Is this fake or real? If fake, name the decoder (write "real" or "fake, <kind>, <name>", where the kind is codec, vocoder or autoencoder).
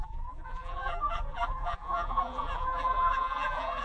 fake, vocoder, BigVGAN v2